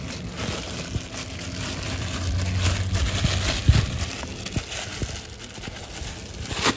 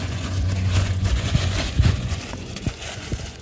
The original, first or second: first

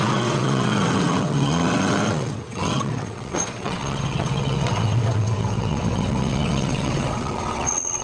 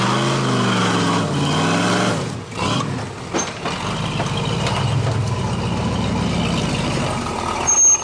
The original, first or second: second